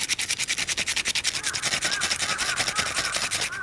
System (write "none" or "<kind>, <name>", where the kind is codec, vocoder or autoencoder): none